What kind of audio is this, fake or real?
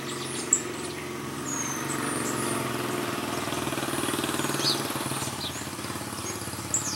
real